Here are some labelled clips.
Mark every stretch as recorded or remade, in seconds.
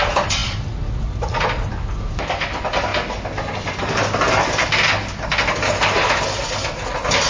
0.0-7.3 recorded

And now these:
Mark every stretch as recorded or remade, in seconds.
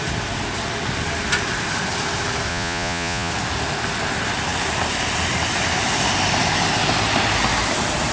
0.0-2.5 recorded; 2.5-3.3 remade; 3.3-8.1 recorded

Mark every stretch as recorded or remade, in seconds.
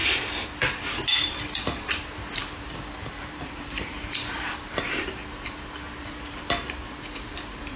0.0-0.8 recorded; 0.8-5.2 remade; 5.2-6.0 recorded; 6.0-7.8 remade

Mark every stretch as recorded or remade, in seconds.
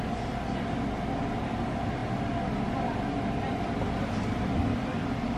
0.0-5.4 recorded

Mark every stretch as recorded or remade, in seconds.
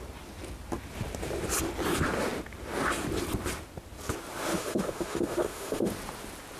0.0-4.5 recorded; 4.5-5.9 remade; 5.9-6.6 recorded